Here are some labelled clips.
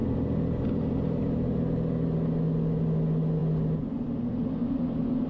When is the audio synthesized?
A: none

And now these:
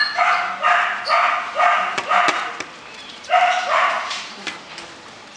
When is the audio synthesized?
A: 1.8-4.7 (vocoder, BigVGAN v2)

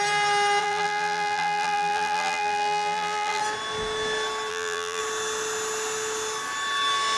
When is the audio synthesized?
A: 0.6-3.4 (vocoder, BigVGAN v2); 4.5-5.0

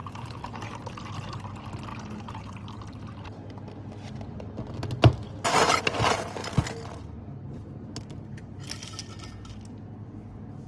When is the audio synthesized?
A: 0.0-0.8 (vocoder, BigVGAN v2)

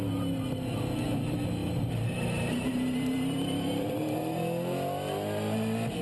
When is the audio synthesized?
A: 1.6-4.4 (vocoder, BigVGAN v2)

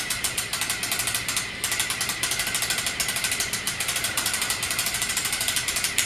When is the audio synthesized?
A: 0.0-0.5 (vocoder, BigVGAN v2); 3.6-6.1